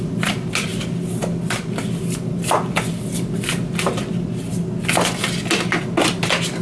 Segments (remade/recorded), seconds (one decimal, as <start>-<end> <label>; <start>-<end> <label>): 0.0-6.6 recorded